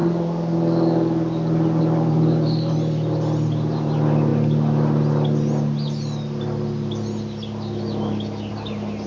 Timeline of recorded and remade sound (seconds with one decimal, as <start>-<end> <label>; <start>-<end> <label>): 0.0-1.8 recorded; 1.8-4.3 remade; 4.3-8.5 recorded; 8.5-9.1 remade